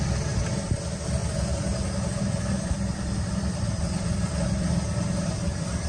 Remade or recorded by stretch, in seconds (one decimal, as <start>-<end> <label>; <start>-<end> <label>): 0.0-5.9 recorded